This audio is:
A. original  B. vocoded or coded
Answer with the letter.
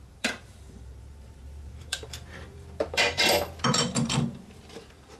B